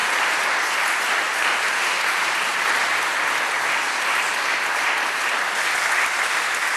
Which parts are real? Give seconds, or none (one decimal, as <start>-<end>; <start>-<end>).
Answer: 0.0-6.8